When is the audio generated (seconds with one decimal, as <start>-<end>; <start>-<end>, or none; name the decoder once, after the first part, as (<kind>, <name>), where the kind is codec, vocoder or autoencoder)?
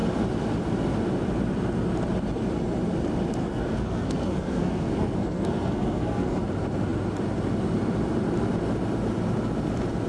3.4-6.4 (codec, SNAC)